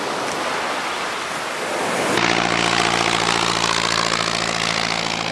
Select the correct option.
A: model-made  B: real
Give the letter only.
B